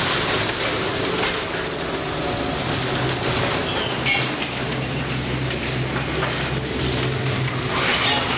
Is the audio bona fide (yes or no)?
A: yes